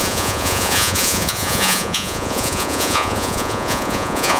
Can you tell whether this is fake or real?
fake